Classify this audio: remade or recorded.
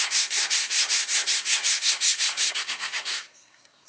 remade